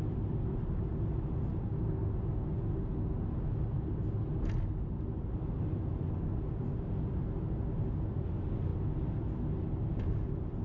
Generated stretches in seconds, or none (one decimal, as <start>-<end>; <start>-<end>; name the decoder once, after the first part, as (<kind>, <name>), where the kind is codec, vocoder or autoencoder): none